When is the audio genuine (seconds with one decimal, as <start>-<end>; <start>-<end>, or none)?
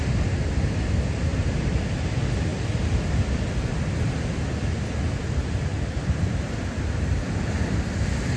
0.0-8.4